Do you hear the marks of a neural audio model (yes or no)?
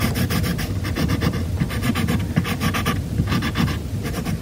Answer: yes